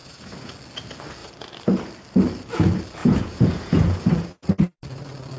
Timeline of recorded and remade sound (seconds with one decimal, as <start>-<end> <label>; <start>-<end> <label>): 0.0-0.5 remade; 0.5-3.0 recorded; 3.0-4.1 remade; 4.1-5.4 recorded